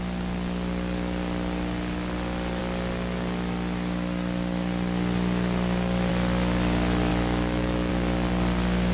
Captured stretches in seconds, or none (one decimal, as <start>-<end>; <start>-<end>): 0.0-7.1; 7.9-8.9